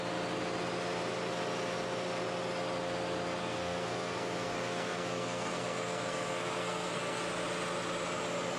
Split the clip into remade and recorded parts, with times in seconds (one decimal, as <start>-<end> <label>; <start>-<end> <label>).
0.0-3.4 recorded; 3.4-7.2 remade; 7.2-8.6 recorded